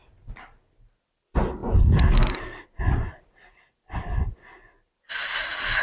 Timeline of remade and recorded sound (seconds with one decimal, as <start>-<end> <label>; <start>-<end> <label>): 0.0-5.8 recorded